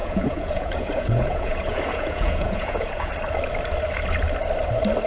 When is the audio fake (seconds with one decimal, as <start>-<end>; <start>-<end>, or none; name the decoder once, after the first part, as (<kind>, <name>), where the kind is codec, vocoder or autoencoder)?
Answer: 0.0-3.1 (vocoder, Vocos)